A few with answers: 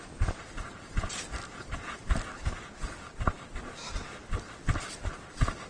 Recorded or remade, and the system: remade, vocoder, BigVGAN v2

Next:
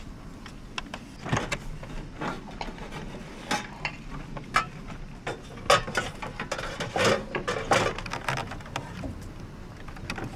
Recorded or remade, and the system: recorded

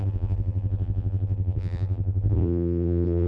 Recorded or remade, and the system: remade, vocoder, BigVGAN v2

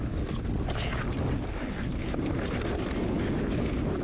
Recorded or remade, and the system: recorded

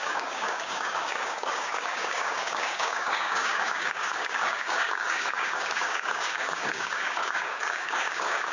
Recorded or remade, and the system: remade, codec, DAC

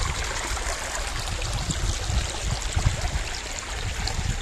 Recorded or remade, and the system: recorded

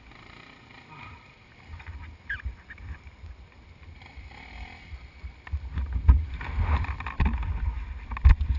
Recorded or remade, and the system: remade, vocoder, BigVGAN v2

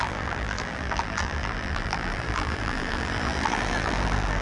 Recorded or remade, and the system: remade, vocoder, BigVGAN v2